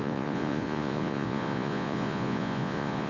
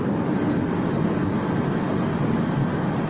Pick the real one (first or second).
second